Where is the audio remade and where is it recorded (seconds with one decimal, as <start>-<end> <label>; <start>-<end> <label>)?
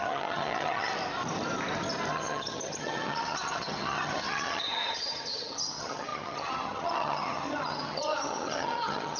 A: 0.0-0.9 remade; 0.9-2.1 recorded; 2.1-9.2 remade